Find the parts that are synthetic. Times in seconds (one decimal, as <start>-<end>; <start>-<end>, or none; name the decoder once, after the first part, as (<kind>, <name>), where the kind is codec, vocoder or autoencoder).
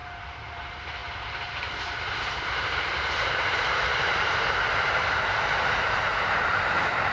0.0-7.1 (vocoder, BigVGAN v2)